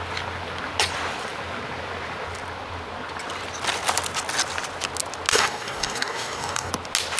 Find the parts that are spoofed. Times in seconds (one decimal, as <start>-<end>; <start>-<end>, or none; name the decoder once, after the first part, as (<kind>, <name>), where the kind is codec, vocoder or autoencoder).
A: 5.3-6.7 (codec, DAC)